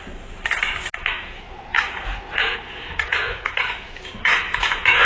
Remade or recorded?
recorded